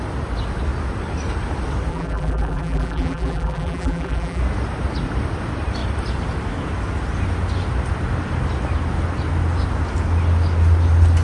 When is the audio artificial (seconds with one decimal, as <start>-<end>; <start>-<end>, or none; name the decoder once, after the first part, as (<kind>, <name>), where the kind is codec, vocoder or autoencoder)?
1.9-4.4 (vocoder, BigVGAN v2)